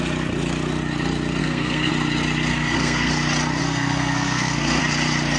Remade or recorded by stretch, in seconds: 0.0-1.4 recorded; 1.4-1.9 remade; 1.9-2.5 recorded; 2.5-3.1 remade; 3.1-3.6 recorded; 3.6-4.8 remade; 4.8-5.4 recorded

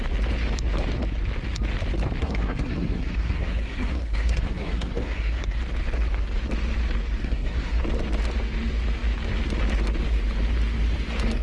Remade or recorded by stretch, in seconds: 0.0-2.2 recorded; 2.2-5.6 remade; 5.6-7.2 recorded; 7.2-7.8 remade; 7.8-11.4 recorded

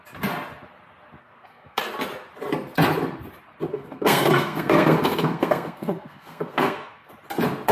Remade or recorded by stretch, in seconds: 0.0-1.2 recorded; 1.2-1.8 remade; 1.8-3.7 recorded; 3.7-7.1 remade; 7.1-7.7 recorded

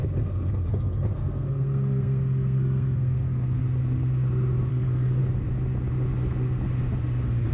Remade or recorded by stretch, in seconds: 0.0-3.6 remade; 3.6-4.7 recorded; 4.7-5.2 remade; 5.2-7.5 recorded